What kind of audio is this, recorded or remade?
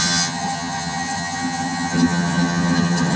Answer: remade